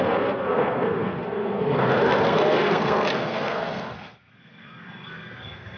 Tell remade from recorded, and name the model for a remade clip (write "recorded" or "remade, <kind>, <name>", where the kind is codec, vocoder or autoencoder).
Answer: remade, codec, SNAC